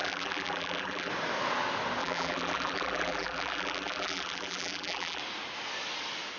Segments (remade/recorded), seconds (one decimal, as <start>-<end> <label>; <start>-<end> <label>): 0.0-1.1 remade; 1.1-2.0 recorded; 2.0-5.2 remade; 5.2-6.4 recorded